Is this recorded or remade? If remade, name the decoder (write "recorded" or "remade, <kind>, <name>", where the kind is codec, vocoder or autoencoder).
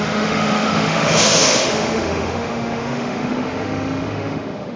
remade, autoencoder, DAC-VAE